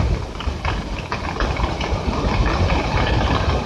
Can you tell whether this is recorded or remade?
recorded